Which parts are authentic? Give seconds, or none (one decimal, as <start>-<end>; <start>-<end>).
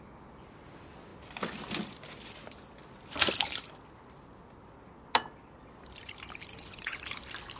0.0-6.5; 7.0-7.6